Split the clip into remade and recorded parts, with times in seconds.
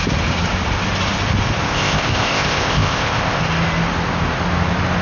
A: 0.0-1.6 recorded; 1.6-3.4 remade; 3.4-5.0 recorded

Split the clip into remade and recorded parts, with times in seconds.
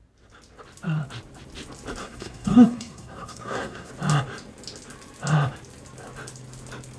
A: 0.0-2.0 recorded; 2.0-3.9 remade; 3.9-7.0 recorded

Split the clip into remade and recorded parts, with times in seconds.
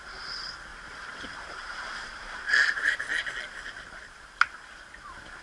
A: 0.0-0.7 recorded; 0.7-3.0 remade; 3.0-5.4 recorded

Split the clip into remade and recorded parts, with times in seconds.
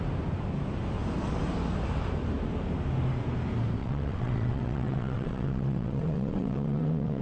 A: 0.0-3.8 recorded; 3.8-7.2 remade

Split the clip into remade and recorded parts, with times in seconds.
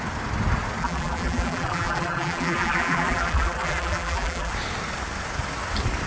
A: 0.0-0.8 recorded; 0.8-4.5 remade; 4.5-6.1 recorded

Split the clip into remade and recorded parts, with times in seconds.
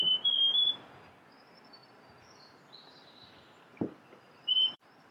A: 0.0-1.8 recorded; 1.8-5.1 remade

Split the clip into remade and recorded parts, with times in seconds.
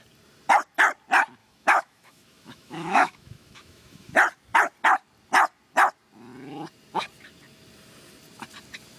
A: 0.0-1.4 recorded; 1.4-4.1 remade; 4.1-9.0 recorded